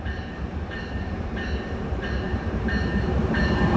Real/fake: fake